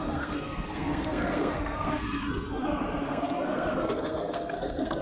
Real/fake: fake